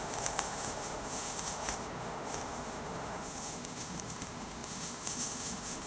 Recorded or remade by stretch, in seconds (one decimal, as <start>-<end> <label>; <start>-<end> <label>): 0.0-5.9 remade